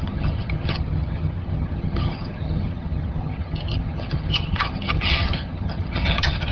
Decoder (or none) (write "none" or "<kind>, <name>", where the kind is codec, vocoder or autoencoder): vocoder, HiFi-GAN